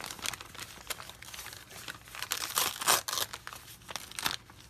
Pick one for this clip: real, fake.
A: real